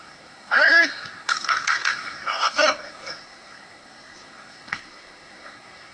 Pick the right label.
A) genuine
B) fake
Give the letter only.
B